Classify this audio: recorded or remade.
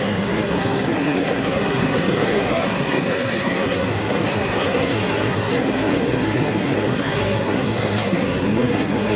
remade